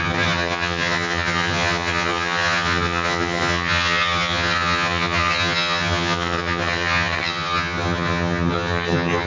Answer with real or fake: fake